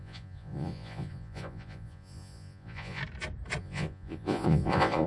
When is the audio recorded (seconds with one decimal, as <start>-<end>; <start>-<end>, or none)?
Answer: 3.0-3.6